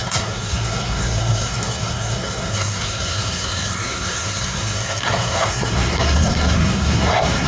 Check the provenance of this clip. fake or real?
fake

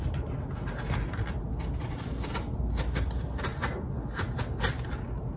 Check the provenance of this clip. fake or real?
real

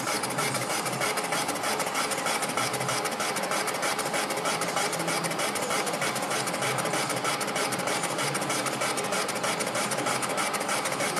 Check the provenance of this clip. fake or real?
real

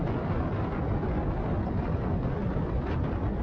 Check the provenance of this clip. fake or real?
real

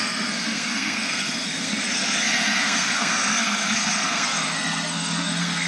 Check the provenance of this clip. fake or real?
fake